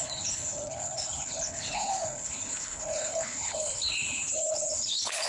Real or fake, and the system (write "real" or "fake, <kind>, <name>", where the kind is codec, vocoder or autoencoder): fake, codec, HILCodec